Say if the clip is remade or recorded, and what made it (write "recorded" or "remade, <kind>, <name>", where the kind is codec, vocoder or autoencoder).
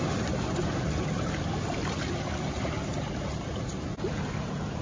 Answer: recorded